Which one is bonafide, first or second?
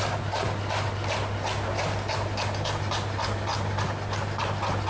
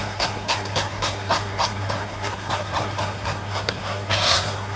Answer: first